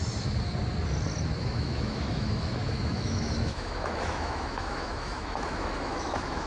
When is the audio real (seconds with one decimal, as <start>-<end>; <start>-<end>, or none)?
0.0-1.4